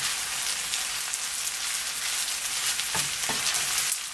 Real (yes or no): yes